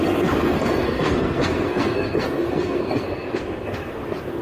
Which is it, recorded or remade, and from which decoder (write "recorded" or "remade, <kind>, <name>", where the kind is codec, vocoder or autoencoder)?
remade, codec, SNAC